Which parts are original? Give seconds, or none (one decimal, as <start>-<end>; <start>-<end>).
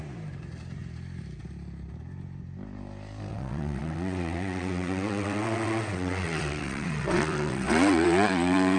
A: 0.0-3.3